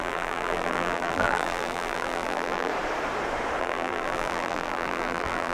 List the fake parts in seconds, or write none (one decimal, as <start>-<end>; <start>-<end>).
0.0-2.7; 3.6-5.5

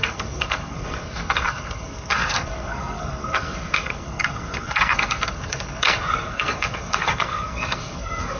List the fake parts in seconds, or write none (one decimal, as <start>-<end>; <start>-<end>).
0.0-8.4